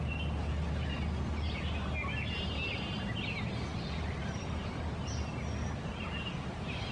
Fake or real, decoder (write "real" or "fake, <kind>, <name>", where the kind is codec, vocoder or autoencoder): real